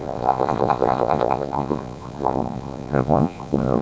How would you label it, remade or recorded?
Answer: remade